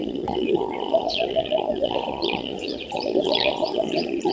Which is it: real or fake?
fake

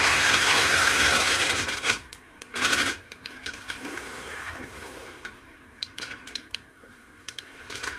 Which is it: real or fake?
fake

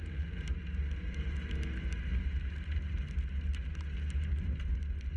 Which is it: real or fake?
real